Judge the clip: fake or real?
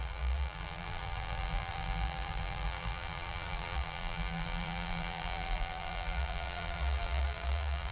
fake